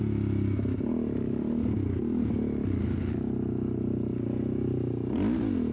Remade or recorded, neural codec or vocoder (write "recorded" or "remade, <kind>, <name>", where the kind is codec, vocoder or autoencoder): recorded